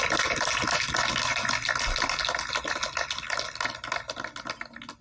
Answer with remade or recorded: recorded